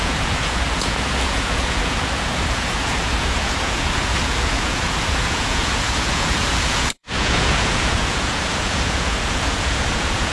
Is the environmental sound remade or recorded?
remade